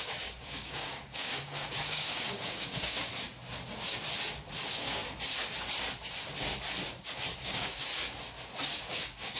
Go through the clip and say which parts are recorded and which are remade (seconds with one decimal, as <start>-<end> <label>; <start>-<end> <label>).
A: 0.0-3.1 remade; 3.1-4.6 recorded; 4.6-5.0 remade; 5.0-7.4 recorded; 7.4-7.9 remade; 7.9-8.8 recorded; 8.8-9.4 remade